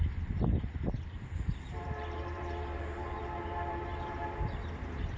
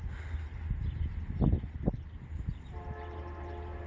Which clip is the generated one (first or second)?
first